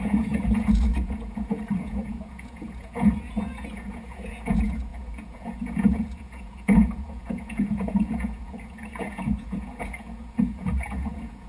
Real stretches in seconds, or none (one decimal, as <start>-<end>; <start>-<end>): none